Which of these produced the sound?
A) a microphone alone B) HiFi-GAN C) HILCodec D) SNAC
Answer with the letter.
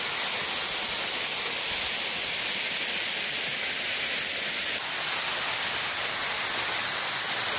A